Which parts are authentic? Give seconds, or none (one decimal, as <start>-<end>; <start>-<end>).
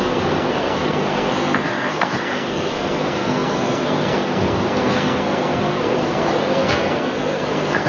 none